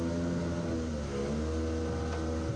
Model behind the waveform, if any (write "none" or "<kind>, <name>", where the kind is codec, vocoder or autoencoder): none